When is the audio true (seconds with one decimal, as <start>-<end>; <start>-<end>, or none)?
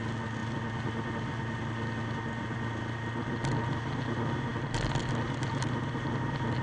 0.0-6.6